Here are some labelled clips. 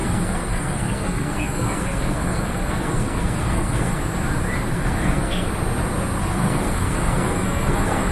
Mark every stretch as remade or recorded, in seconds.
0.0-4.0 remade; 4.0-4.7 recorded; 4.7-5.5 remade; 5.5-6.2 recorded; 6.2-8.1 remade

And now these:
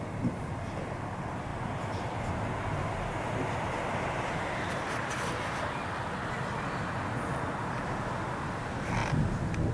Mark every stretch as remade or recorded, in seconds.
0.0-9.7 recorded

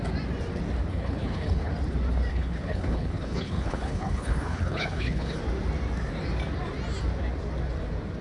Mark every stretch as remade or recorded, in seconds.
0.0-0.9 recorded; 0.9-1.7 remade; 1.7-2.3 recorded; 2.3-5.4 remade; 5.4-8.2 recorded

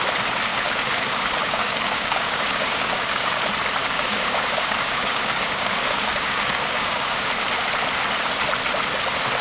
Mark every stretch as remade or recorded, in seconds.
0.0-0.5 recorded; 0.5-3.4 remade; 3.4-3.8 recorded; 3.8-7.3 remade; 7.3-9.4 recorded

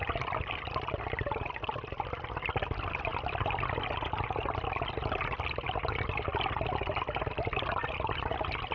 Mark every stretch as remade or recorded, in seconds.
0.0-8.7 recorded

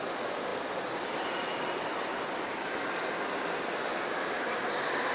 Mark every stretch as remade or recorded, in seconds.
0.0-5.1 recorded